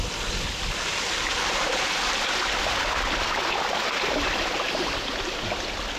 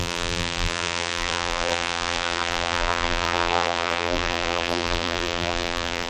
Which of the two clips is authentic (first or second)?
first